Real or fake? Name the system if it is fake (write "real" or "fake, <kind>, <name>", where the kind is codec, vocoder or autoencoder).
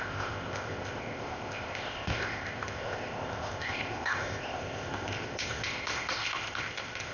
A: fake, codec, ZipCodec